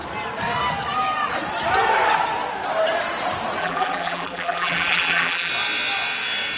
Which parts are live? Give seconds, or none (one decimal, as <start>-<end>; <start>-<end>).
0.0-3.6; 5.5-6.6